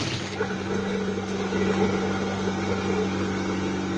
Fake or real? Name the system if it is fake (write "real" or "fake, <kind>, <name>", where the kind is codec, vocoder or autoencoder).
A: real